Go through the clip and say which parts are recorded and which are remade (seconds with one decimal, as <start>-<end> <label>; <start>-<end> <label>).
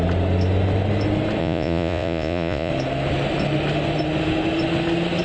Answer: 0.0-1.4 recorded; 1.4-2.7 remade; 2.7-5.2 recorded